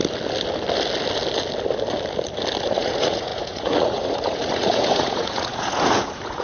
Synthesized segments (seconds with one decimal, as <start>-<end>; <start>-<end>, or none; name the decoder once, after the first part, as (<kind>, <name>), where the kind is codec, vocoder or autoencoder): 2.6-6.4 (vocoder, Vocos)